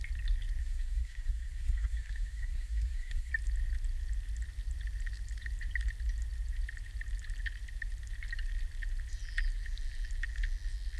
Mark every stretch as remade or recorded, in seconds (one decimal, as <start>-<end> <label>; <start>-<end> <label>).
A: 0.0-0.6 recorded; 0.6-3.3 remade; 3.3-11.0 recorded

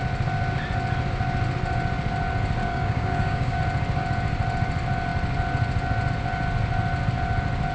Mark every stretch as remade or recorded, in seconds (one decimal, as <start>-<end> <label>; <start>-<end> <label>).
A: 0.0-2.6 recorded; 2.6-3.6 remade; 3.6-7.7 recorded

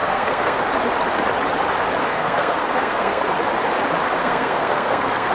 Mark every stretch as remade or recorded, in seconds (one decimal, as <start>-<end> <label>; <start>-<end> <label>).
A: 0.0-0.6 remade; 0.6-2.0 recorded; 2.0-3.2 remade; 3.2-4.2 recorded; 4.2-5.3 remade